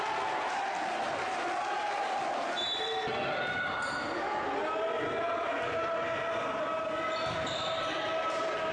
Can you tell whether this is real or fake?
real